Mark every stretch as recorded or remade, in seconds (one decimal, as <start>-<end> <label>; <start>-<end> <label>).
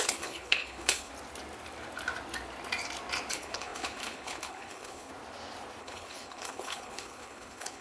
0.0-1.1 remade; 1.1-3.3 recorded; 3.3-5.1 remade; 5.1-5.8 recorded; 5.8-7.8 remade